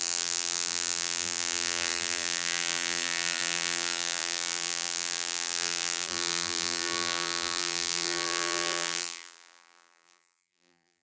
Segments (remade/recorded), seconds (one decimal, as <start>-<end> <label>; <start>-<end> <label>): 0.0-11.0 remade